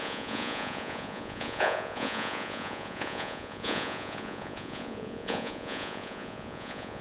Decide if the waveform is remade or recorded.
remade